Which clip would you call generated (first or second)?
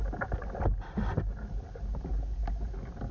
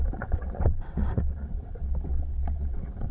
second